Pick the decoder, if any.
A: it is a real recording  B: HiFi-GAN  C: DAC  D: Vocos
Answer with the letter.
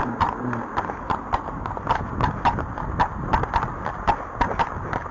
A